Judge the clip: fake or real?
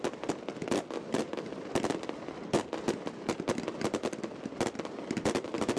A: real